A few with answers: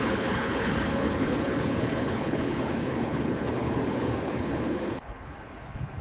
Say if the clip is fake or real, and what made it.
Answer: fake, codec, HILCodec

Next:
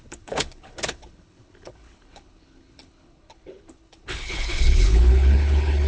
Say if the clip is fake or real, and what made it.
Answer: fake, codec, HILCodec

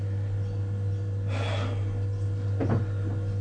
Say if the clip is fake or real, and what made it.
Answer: real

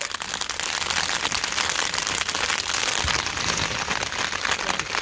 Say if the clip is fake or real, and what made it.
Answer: real